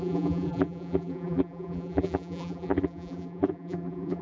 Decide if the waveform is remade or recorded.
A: remade